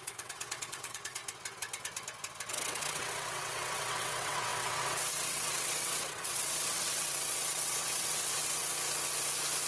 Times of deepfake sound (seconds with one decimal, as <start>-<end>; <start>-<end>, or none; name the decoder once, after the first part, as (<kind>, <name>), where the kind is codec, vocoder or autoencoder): 0.0-1.2 (vocoder, WaveNeXt); 2.5-8.7